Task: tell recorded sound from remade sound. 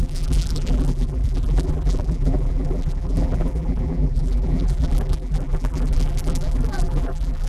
remade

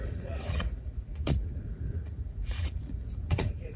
remade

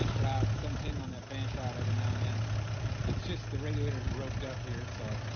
recorded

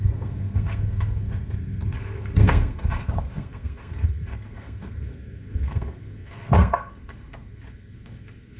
remade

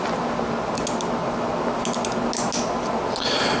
recorded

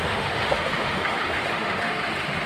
remade